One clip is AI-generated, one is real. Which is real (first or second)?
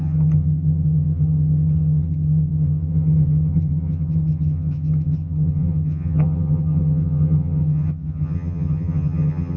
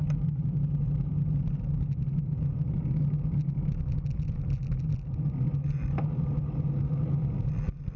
second